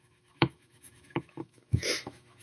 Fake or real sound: fake